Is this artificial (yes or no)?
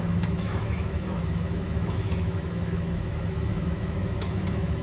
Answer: yes